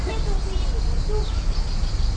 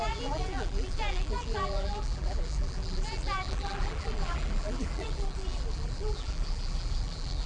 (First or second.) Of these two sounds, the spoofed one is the second